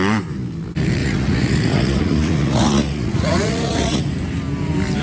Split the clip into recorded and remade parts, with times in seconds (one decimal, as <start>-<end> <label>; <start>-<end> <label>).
0.0-1.0 recorded; 1.0-4.0 remade; 4.0-5.0 recorded